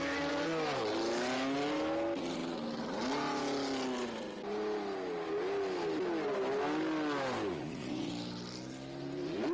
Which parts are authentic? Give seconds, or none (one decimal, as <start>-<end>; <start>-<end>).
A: 0.0-7.5; 8.1-9.5